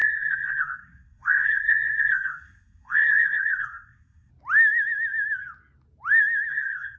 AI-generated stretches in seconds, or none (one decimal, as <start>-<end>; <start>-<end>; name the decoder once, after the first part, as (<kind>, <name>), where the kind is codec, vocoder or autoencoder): 0.0-4.3 (codec, SNAC); 6.5-7.0